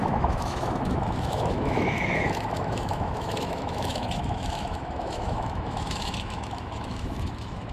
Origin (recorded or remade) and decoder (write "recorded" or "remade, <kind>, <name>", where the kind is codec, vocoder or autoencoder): remade, autoencoder, DAC-VAE